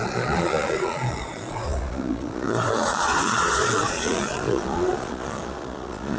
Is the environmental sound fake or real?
fake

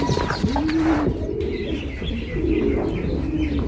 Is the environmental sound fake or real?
real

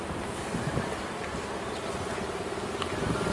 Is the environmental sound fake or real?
real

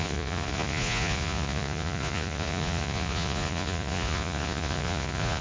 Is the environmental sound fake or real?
fake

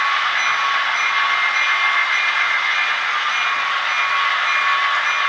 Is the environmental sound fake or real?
real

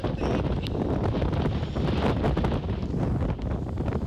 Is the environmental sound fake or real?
real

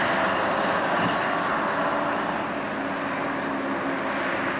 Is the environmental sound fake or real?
real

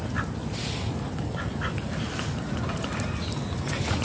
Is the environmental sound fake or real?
real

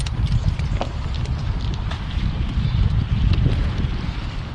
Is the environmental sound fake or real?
real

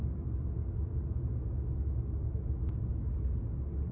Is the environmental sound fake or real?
real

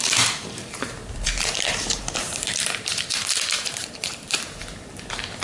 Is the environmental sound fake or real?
fake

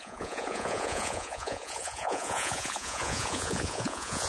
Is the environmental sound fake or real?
fake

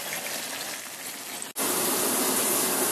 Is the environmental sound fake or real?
real